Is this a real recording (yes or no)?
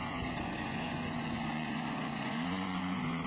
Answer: no